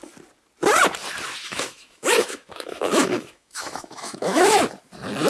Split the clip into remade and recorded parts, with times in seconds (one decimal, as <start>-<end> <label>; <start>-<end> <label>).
0.0-1.4 recorded; 1.4-4.6 remade; 4.6-5.3 recorded